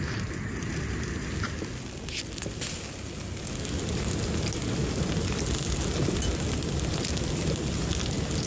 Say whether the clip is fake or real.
real